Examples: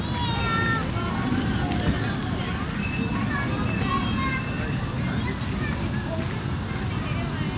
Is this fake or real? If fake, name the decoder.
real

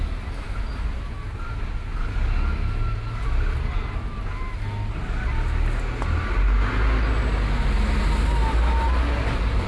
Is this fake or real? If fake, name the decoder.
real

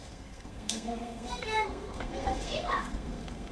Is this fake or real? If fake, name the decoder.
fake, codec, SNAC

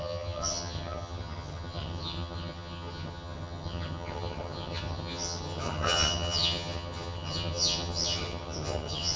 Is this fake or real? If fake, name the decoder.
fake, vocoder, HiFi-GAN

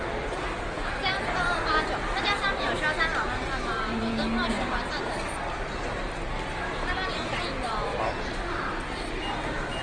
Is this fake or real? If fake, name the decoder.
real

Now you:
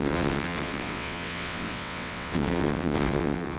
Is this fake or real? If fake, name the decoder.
fake, vocoder, WaveNeXt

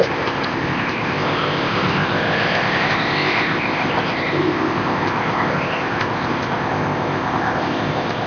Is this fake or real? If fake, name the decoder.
fake, codec, ZipCodec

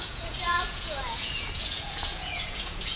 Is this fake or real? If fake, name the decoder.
fake, vocoder, Vocos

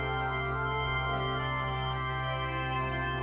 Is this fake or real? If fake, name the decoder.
fake, codec, SNAC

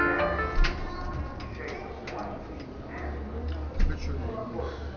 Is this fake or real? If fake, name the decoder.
real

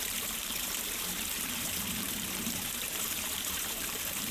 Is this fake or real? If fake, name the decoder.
fake, vocoder, BigVGAN v2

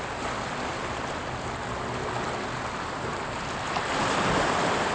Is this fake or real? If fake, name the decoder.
real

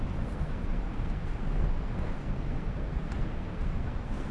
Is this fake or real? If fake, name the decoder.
fake, codec, SNAC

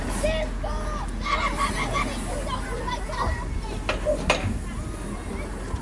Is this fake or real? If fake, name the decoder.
real